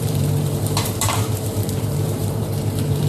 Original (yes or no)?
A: no